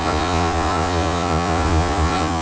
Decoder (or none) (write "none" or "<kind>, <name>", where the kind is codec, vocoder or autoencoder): vocoder, Vocos